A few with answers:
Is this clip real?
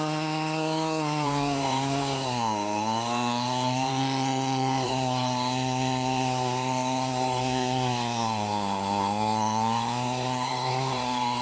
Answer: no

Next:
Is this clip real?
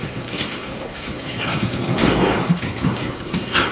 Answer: no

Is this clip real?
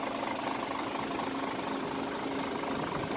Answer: yes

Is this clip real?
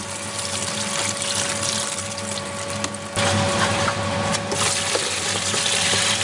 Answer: yes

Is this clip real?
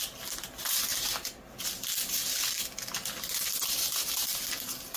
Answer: yes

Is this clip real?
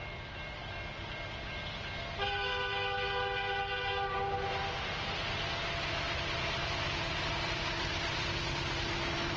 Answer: yes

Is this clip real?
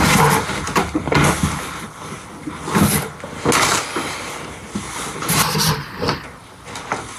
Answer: yes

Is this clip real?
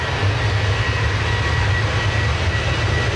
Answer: yes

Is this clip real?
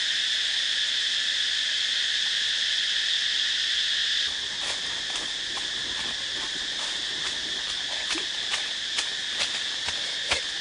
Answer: yes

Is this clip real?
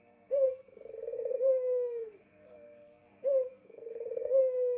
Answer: no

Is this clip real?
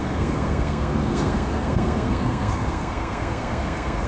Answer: no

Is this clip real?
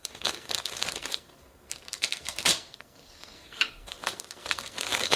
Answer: no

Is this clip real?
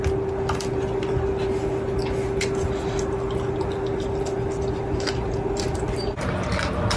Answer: yes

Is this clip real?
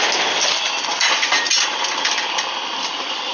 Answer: yes